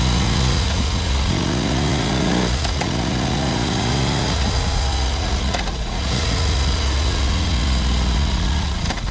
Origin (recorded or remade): remade